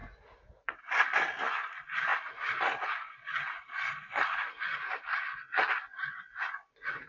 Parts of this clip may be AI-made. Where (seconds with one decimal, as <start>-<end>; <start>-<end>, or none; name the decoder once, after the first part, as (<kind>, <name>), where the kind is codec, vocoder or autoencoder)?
0.0-0.8 (vocoder, Vocos)